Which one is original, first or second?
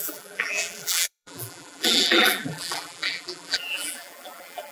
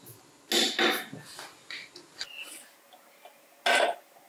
second